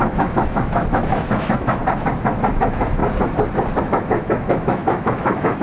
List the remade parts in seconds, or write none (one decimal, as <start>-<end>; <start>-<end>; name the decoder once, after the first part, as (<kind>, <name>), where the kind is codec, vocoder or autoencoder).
0.0-1.8 (autoencoder, DAC-VAE); 2.5-3.0; 3.8-5.6